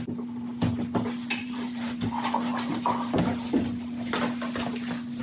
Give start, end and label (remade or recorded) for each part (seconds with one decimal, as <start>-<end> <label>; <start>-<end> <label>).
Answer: 0.0-1.4 recorded; 1.4-2.1 remade; 2.1-5.2 recorded